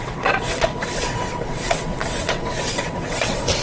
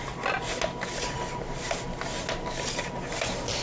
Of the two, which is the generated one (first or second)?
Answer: first